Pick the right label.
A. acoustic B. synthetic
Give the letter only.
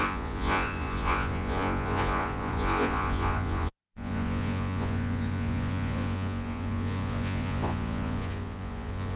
B